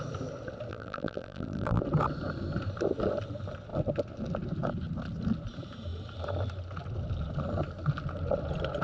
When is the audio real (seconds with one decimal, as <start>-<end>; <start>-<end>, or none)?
0.0-0.7; 1.8-8.8